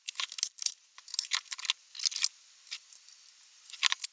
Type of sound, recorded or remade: recorded